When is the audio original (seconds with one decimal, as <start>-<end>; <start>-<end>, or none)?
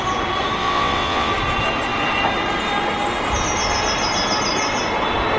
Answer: 0.0-0.6; 1.3-5.4